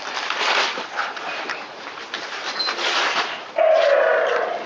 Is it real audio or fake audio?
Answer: fake